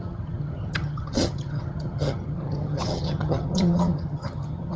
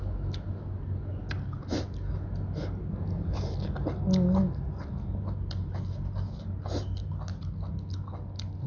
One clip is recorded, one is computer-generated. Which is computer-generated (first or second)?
first